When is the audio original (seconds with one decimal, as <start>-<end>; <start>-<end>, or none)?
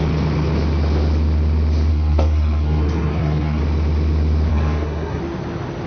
0.0-1.9; 3.6-4.5; 5.2-5.9